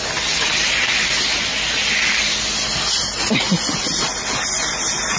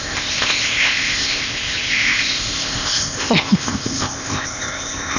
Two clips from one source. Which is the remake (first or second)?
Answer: second